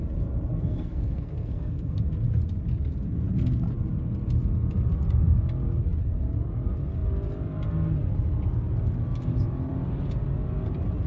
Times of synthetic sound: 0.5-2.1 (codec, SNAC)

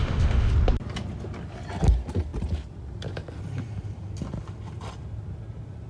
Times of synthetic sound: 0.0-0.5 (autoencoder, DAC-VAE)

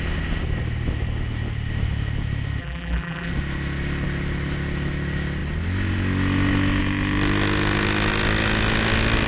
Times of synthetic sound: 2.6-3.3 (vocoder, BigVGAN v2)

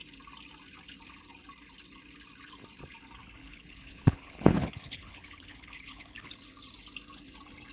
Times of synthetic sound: 3.4-6.3 (codec, HILCodec)